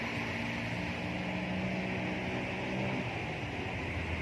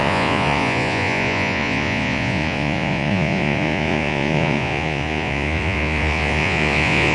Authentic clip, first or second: first